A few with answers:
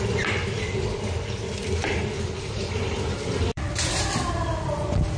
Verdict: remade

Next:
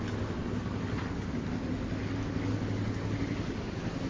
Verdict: recorded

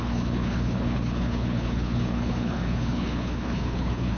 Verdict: remade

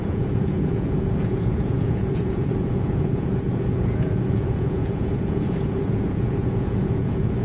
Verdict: remade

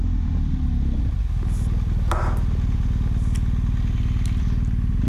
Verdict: recorded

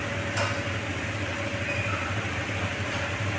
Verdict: recorded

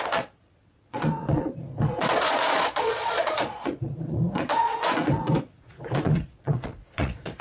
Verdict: remade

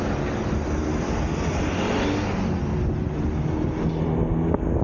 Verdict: recorded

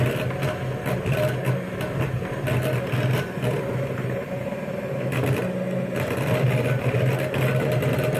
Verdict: recorded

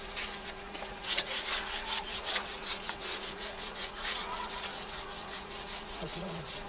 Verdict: remade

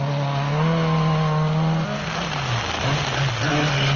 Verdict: recorded